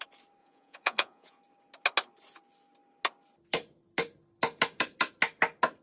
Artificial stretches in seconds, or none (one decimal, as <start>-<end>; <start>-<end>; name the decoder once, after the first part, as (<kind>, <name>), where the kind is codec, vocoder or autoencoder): 0.4-1.4 (vocoder, Vocos)